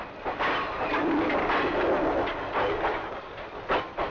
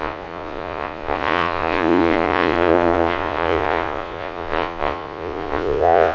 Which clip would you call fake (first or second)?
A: second